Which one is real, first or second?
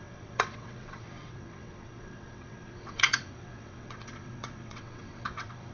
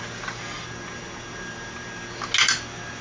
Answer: second